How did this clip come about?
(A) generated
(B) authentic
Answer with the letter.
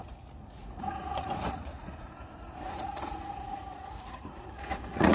A